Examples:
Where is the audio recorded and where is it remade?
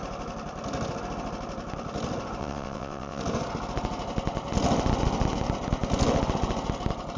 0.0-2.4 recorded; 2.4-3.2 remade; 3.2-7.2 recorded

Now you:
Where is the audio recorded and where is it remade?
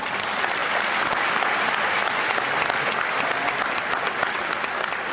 0.0-5.1 recorded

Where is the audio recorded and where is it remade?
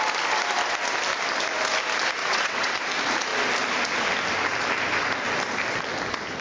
0.0-2.2 recorded; 2.2-2.8 remade; 2.8-6.4 recorded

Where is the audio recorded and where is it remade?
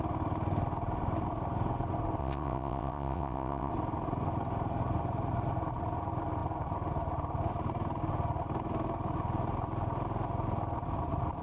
0.0-2.2 recorded; 2.2-3.7 remade; 3.7-11.4 recorded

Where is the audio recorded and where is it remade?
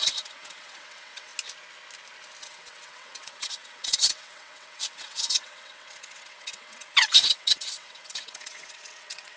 0.0-1.3 remade; 1.3-2.4 recorded; 2.4-9.4 remade